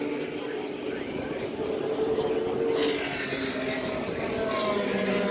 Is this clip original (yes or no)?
yes